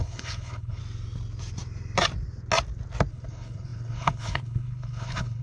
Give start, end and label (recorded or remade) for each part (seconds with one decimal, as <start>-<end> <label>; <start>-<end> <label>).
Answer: 0.0-0.8 remade; 0.8-3.1 recorded; 3.1-5.4 remade